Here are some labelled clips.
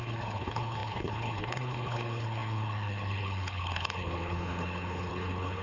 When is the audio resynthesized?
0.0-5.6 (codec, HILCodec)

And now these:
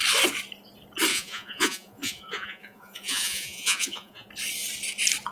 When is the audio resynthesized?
1.1-4.3 (vocoder, Vocos)

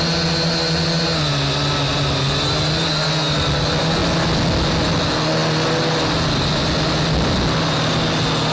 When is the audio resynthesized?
none

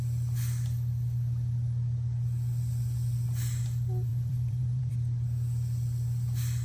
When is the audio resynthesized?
4.1-4.9 (vocoder, BigVGAN v2)

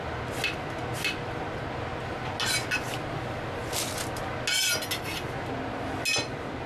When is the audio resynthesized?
none

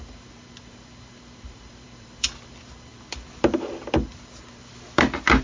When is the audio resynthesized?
0.0-5.4 (vocoder, BigVGAN v2)

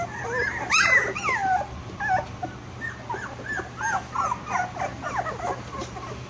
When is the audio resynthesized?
none